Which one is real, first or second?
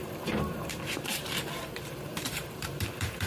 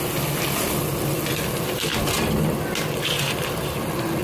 second